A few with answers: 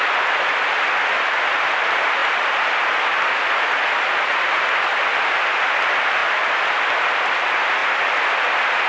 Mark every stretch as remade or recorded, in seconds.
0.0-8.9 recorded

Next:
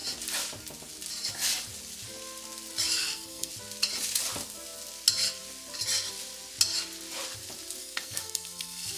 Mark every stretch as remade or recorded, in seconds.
0.0-3.0 recorded; 3.0-3.5 remade; 3.5-7.8 recorded; 7.8-9.0 remade